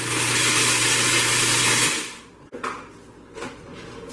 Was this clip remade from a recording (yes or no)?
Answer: no